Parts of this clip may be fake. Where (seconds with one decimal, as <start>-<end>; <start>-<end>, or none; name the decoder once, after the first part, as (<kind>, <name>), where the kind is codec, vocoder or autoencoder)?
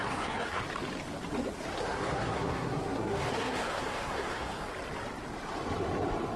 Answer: 0.0-0.6 (codec, SNAC); 1.8-4.7